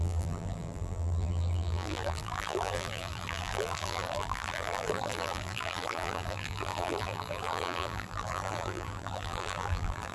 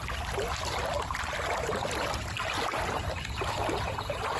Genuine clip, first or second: second